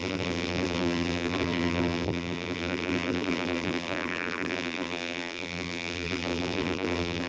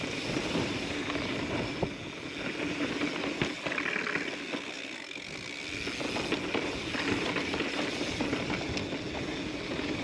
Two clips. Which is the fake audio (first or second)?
first